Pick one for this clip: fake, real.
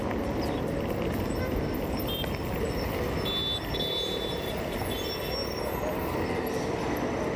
real